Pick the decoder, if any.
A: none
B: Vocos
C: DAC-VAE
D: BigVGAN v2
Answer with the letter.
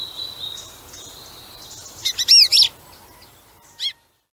A